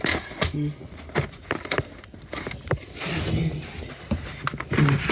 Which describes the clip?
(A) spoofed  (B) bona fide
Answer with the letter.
B